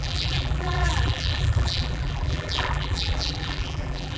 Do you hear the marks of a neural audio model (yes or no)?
yes